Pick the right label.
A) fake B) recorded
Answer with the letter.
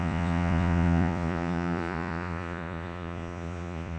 A